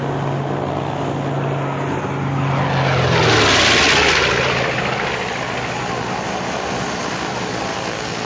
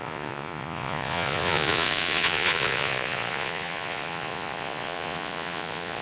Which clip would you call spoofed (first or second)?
second